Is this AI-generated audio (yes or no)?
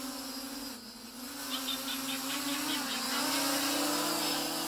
no